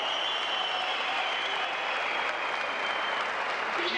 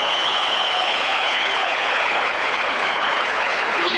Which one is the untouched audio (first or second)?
first